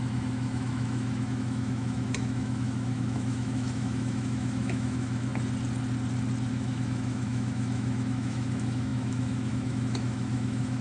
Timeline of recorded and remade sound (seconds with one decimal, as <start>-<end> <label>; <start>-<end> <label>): 0.0-5.3 remade; 5.3-6.5 recorded; 6.5-10.8 remade